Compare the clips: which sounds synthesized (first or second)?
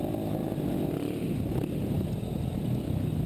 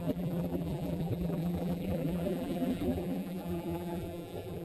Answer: second